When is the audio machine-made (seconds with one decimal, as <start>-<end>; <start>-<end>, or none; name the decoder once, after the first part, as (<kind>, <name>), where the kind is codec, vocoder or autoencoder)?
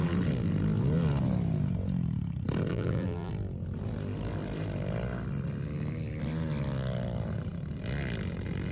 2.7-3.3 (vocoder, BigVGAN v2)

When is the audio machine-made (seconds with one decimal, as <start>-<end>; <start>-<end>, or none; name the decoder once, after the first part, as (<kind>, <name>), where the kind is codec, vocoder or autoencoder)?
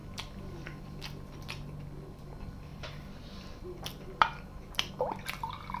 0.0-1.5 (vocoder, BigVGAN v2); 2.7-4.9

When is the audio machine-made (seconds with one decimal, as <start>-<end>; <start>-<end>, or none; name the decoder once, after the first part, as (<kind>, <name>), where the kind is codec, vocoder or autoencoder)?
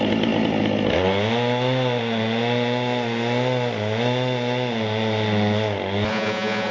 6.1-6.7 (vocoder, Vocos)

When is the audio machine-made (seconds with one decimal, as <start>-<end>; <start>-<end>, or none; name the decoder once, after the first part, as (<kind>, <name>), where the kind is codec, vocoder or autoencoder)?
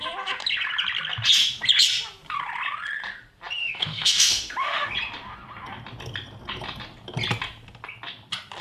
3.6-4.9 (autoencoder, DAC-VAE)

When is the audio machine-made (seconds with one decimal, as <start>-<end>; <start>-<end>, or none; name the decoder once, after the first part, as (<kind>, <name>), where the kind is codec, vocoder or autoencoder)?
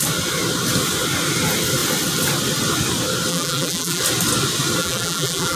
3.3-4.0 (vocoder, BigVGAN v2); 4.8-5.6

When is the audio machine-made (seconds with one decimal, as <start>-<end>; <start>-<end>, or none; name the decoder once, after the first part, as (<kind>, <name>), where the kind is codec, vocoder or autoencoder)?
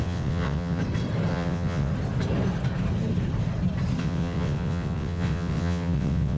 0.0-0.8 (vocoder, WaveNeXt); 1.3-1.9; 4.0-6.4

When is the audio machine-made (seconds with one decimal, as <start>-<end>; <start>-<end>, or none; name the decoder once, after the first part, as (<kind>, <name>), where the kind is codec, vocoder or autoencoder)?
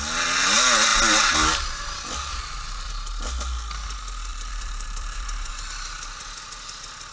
2.3-2.9 (vocoder, BigVGAN v2); 4.3-5.5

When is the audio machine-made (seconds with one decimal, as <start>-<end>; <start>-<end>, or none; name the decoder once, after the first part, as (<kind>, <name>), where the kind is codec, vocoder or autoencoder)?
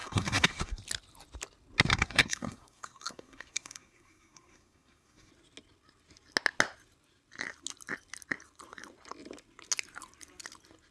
0.0-0.8 (codec, SNAC); 1.9-5.3